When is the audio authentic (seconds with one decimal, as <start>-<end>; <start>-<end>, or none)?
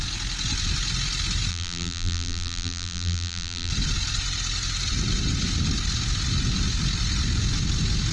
0.0-1.5; 3.7-8.1